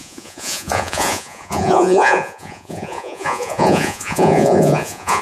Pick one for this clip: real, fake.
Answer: fake